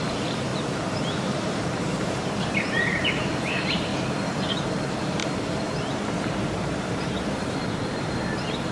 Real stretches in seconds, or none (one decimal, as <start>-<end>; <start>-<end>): 3.9-4.8; 5.2-5.9